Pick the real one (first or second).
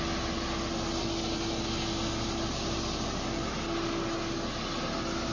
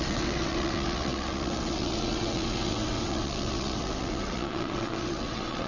first